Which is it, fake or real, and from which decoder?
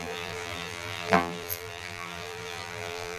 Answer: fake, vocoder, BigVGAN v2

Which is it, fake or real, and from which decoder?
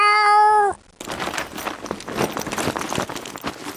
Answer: real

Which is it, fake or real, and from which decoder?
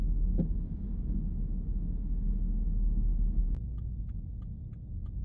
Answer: real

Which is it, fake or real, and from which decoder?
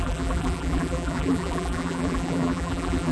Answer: fake, vocoder, BigVGAN v2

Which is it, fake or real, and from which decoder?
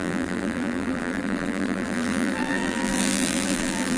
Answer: fake, vocoder, BigVGAN v2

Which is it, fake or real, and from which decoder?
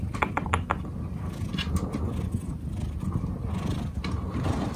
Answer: real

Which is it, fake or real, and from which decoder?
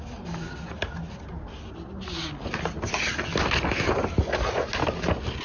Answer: real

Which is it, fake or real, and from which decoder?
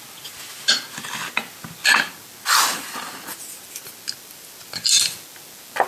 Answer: real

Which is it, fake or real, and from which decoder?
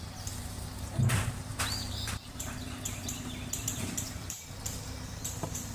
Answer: fake, vocoder, BigVGAN v2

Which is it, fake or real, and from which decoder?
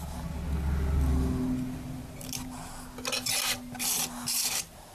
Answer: real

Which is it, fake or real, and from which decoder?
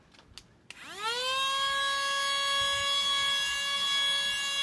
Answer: real